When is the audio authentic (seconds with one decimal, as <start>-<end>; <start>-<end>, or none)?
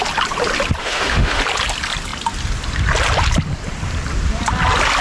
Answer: 0.0-0.8; 1.4-5.0